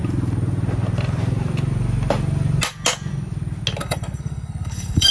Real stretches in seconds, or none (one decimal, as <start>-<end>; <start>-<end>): 0.0-3.8